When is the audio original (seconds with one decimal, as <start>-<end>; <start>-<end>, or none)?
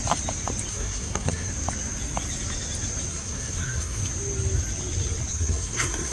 0.0-0.7; 1.5-3.1; 4.0-5.3